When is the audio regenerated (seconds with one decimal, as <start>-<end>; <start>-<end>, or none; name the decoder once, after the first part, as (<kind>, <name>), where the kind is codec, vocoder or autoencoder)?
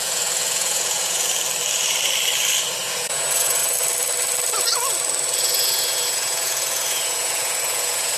0.0-1.3 (vocoder, Vocos); 2.8-3.6; 5.4-8.2